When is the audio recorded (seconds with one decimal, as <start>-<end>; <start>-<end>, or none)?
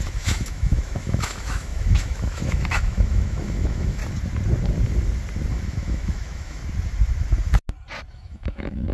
4.0-5.5; 6.6-8.1